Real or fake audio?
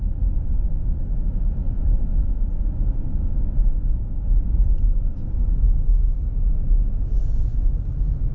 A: real